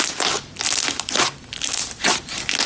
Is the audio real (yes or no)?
yes